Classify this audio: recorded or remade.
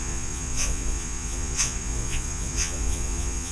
remade